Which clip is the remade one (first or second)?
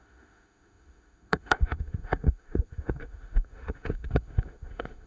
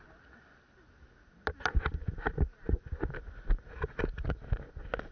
first